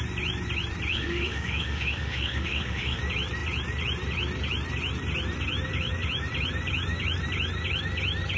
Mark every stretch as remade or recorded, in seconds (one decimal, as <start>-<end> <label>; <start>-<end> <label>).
0.0-0.9 recorded; 0.9-3.0 remade; 3.0-8.4 recorded